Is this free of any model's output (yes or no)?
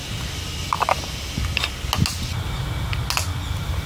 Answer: yes